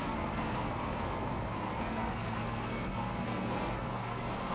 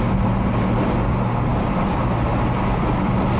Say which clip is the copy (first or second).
first